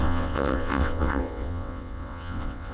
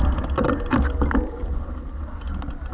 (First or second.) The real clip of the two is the second